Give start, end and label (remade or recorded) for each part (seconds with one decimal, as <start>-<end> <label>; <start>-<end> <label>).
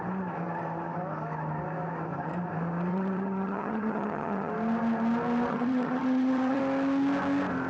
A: 0.0-2.9 recorded; 2.9-4.5 remade; 4.5-5.5 recorded; 5.5-6.6 remade; 6.6-7.7 recorded